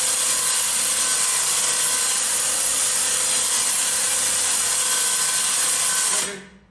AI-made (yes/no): no